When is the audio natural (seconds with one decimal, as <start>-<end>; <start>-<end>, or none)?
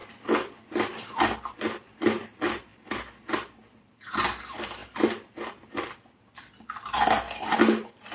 0.0-8.1